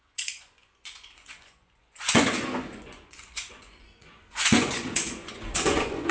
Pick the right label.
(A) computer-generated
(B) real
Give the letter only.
A